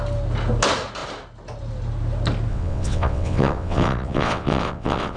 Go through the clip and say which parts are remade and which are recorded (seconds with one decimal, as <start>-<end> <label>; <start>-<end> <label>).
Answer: 0.0-2.5 recorded; 2.5-5.2 remade